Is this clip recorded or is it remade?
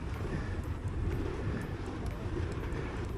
remade